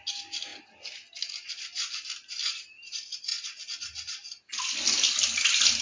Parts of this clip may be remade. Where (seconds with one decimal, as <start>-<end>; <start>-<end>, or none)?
none